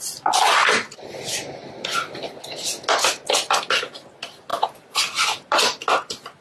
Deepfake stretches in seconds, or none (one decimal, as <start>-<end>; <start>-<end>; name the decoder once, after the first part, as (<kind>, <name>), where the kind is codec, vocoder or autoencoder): none

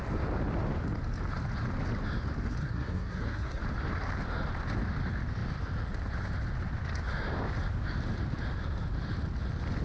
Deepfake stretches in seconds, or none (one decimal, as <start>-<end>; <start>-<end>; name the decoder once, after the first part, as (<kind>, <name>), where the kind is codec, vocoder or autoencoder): 2.6-3.6 (codec, SNAC)

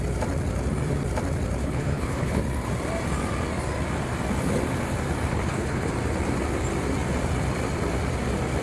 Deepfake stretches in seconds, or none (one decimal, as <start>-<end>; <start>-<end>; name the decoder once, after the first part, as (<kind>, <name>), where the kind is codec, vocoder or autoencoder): 1.6-2.4 (codec, HILCodec); 5.3-5.9

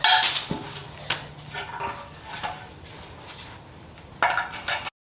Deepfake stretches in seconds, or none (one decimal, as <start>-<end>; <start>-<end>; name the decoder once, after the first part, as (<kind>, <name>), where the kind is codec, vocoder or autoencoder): none